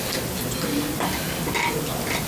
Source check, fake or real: real